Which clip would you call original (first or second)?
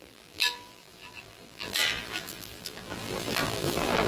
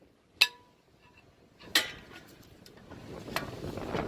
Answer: second